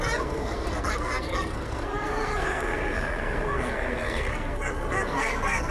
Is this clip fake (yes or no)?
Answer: yes